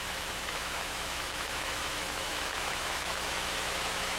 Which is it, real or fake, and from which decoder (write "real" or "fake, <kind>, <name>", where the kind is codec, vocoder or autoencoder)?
fake, autoencoder, DAC-VAE